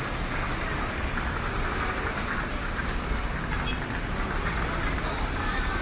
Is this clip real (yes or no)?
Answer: yes